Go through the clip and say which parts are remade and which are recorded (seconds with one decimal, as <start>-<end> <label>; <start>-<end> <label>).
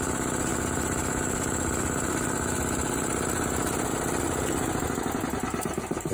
0.0-0.5 recorded; 0.5-4.2 remade; 4.2-6.1 recorded